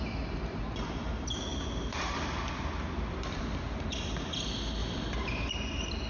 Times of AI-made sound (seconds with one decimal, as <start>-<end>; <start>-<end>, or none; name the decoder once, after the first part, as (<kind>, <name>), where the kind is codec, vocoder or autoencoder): 4.8-5.5 (vocoder, BigVGAN v2)